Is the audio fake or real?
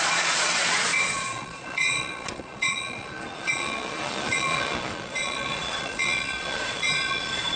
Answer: fake